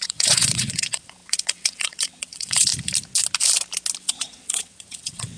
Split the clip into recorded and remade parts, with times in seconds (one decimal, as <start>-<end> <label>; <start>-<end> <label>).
0.0-2.7 remade; 2.7-4.0 recorded; 4.0-5.4 remade